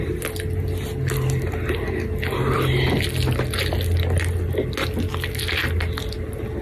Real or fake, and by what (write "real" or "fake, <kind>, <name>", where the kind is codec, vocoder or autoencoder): real